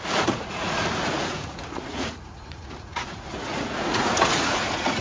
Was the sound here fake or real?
fake